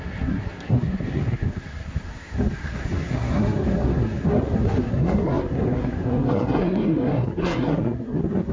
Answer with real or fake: fake